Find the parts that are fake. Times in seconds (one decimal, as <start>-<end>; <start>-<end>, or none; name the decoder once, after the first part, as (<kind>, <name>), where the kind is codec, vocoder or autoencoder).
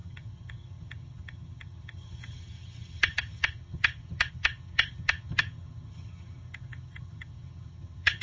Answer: 0.0-8.2 (vocoder, HiFi-GAN)